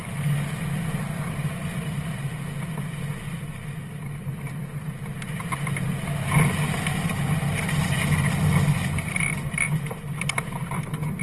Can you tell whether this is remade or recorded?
recorded